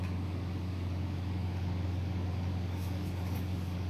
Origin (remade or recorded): remade